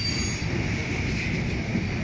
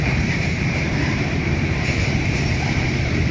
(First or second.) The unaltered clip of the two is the first